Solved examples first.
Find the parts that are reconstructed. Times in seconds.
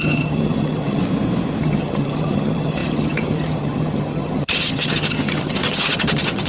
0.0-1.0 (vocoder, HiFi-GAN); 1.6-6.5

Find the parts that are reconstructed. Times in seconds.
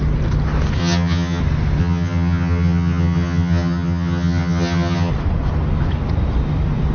0.8-1.4 (vocoder, HiFi-GAN); 1.8-5.1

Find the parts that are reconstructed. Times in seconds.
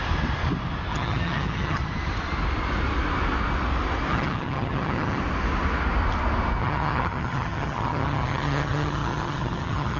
0.9-1.8 (vocoder, HiFi-GAN); 4.1-5.2; 6.6-10.0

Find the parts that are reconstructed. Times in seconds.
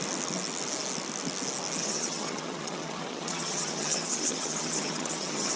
1.8-5.6 (vocoder, HiFi-GAN)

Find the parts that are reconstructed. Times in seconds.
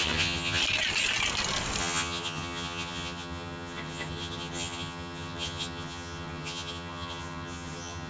0.0-0.6 (vocoder, HiFi-GAN); 1.8-8.1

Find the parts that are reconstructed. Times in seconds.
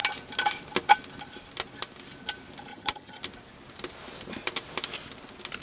2.7-3.2 (vocoder, HiFi-GAN)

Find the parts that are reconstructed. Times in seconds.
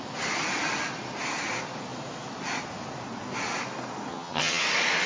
4.1-4.6 (vocoder, HiFi-GAN)